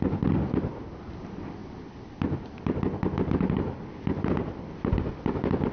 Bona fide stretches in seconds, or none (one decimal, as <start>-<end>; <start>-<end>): 0.0-5.7